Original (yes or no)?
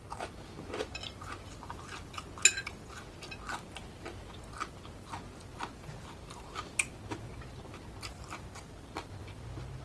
yes